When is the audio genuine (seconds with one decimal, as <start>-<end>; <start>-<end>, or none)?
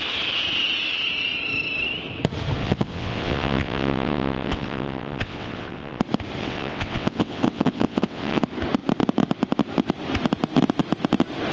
0.0-2.6; 6.0-6.4; 8.4-11.5